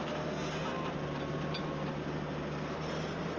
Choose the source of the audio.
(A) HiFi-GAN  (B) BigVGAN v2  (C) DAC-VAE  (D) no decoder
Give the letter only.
D